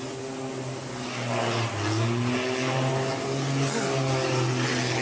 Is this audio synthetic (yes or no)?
no